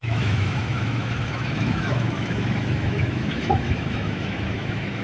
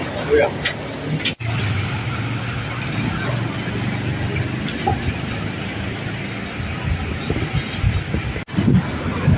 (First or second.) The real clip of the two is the second